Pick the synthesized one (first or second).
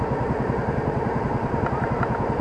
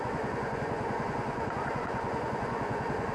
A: second